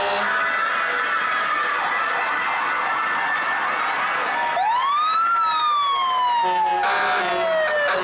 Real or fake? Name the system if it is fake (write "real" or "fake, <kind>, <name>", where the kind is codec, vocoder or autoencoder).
real